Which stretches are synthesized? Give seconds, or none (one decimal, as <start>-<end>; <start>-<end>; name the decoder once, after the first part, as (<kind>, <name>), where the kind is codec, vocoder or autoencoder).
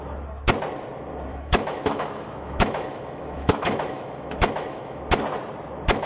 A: 1.3-5.0 (autoencoder, DAC-VAE)